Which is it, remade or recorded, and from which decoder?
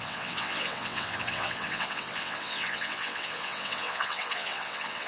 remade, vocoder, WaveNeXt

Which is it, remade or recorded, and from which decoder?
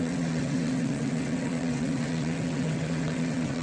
remade, vocoder, WaveNeXt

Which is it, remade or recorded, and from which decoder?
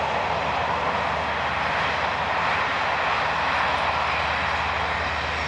recorded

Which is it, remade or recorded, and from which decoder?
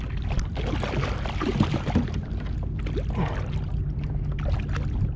recorded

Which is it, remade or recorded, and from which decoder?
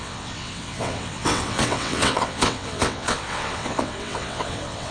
remade, vocoder, WaveNeXt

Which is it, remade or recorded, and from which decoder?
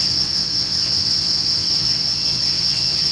remade, vocoder, WaveNeXt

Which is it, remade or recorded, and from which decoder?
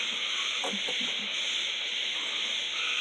recorded